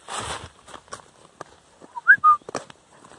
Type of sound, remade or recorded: recorded